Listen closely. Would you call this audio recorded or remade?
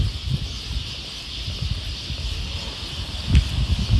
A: recorded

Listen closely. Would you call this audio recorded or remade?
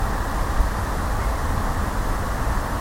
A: recorded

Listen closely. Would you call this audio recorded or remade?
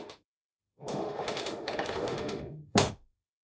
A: remade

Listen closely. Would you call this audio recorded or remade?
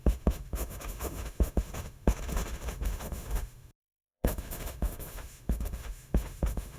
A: remade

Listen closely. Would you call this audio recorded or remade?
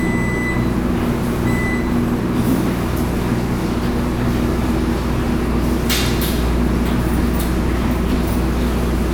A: recorded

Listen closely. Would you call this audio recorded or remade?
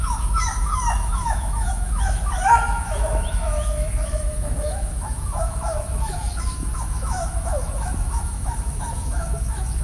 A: remade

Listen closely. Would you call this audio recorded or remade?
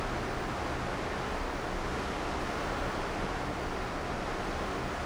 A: recorded